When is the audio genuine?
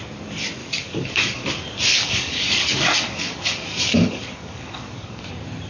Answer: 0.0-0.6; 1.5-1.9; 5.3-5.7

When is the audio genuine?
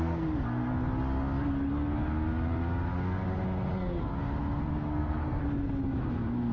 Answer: 0.7-4.6; 5.4-6.5